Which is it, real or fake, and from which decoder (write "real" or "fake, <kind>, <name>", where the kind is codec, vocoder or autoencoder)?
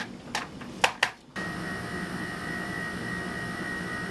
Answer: real